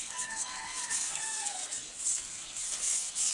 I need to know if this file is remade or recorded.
remade